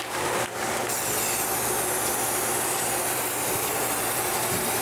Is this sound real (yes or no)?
yes